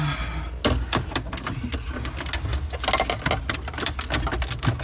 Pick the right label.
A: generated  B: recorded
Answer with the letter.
B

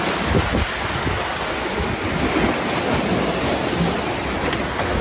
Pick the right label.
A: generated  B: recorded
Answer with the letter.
B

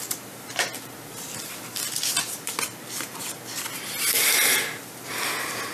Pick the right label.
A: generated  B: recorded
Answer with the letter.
B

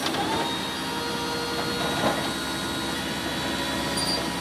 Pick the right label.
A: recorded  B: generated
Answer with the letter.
A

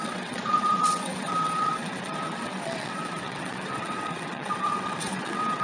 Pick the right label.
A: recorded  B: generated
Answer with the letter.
B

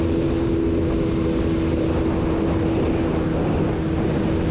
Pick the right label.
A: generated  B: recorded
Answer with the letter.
B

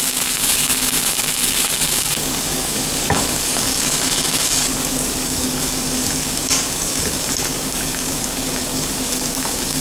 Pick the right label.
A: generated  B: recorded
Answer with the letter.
A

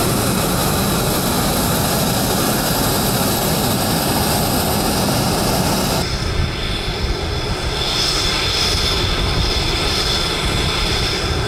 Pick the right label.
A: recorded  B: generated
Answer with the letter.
A